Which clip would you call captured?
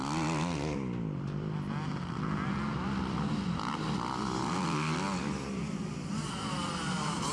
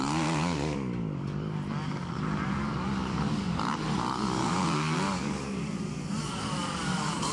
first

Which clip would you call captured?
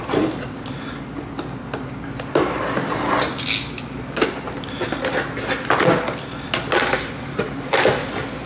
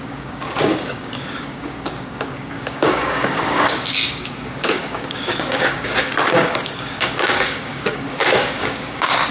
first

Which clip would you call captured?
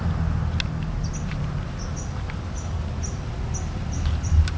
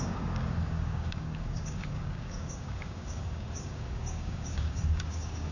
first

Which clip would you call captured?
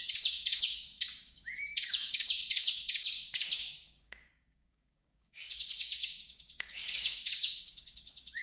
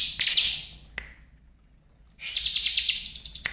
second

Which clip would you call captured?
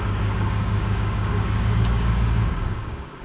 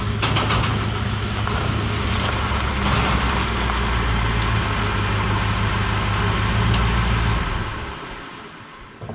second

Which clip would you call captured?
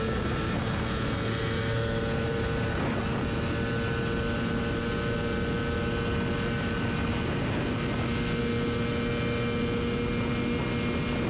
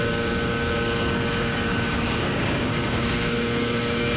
first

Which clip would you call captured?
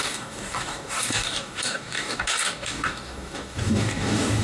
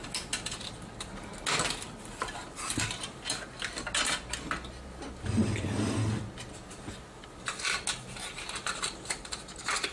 second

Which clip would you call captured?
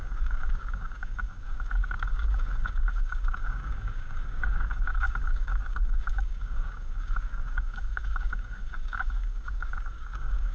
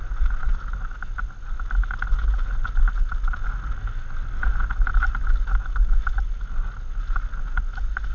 second